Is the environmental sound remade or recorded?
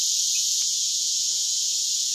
remade